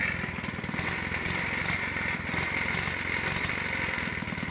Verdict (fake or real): real